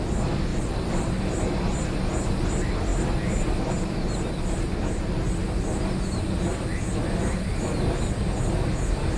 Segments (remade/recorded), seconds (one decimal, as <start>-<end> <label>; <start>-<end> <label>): 0.0-9.2 recorded